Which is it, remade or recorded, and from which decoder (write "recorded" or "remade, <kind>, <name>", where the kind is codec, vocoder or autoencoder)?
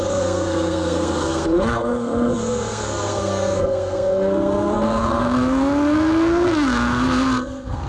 remade, codec, SNAC